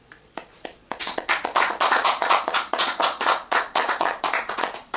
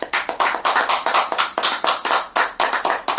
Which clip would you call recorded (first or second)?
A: second